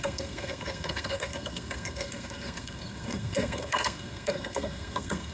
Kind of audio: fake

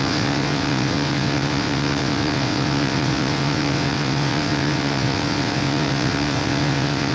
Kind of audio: fake